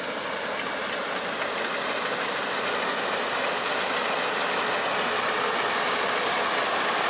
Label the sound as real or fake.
real